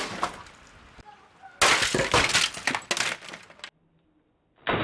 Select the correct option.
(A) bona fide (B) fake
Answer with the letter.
A